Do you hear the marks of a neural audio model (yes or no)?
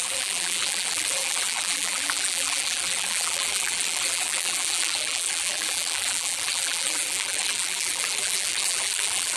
yes